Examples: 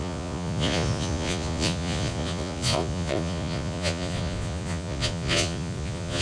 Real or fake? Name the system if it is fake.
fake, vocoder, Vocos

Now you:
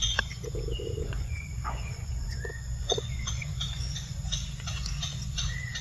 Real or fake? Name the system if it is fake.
fake, vocoder, Vocos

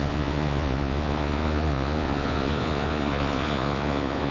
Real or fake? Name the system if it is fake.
fake, vocoder, Vocos